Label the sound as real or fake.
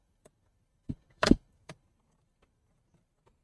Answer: fake